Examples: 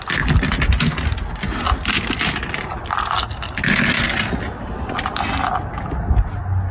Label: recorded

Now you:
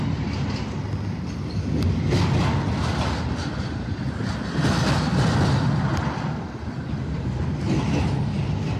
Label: recorded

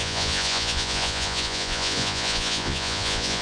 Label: remade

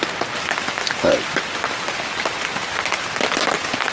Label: recorded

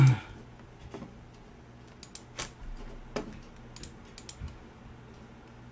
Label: recorded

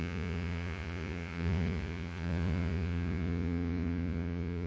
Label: remade